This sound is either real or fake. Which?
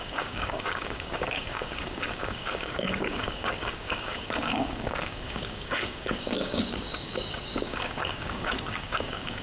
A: fake